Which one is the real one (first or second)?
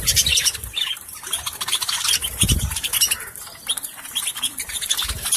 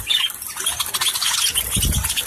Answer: second